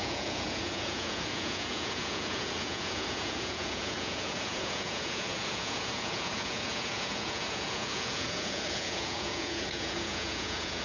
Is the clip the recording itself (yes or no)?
no